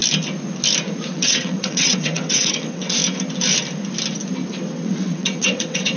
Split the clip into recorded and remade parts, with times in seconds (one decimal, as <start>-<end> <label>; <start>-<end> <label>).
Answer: 0.0-1.1 recorded; 1.1-3.0 remade; 3.0-4.7 recorded; 4.7-6.0 remade